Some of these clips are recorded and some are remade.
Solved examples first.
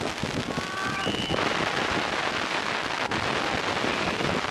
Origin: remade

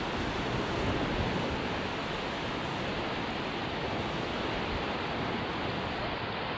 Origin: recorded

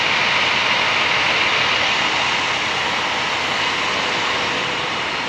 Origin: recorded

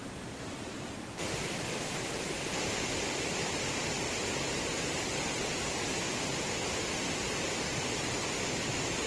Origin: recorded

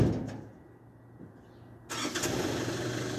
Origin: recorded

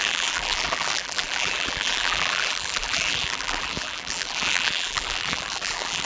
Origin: remade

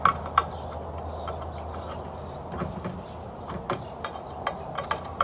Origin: recorded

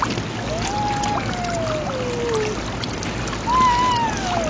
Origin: recorded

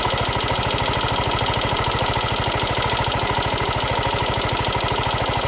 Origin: recorded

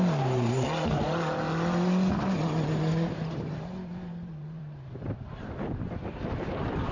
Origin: remade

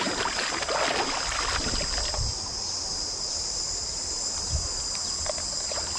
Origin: recorded